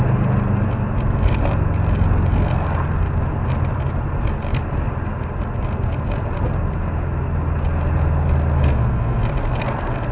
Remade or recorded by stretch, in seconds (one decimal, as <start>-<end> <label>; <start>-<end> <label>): 0.0-8.6 recorded; 8.6-9.2 remade; 9.2-10.1 recorded